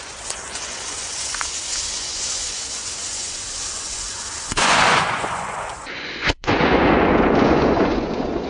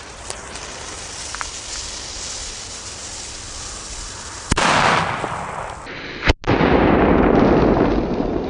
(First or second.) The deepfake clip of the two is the first